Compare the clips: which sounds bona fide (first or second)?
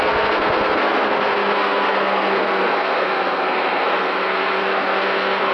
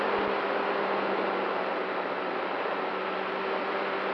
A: second